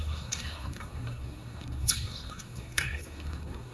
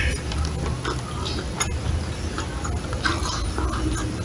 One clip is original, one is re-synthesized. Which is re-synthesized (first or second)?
first